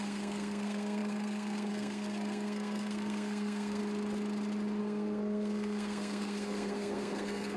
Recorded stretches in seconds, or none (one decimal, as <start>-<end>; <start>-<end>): 3.8-4.8